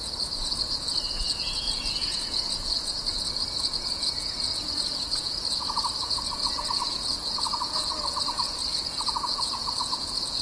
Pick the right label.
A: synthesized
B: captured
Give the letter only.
A